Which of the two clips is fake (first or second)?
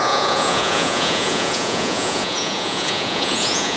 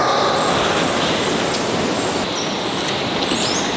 first